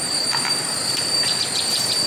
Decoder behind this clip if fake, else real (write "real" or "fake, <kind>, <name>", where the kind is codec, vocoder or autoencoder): fake, vocoder, BigVGAN v2